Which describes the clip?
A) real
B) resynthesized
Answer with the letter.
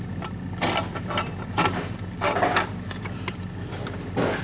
A